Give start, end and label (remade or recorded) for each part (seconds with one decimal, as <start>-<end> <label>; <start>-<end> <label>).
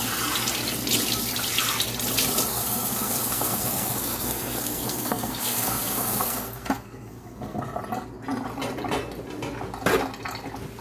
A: 0.0-2.5 recorded; 2.5-7.6 remade; 7.6-10.8 recorded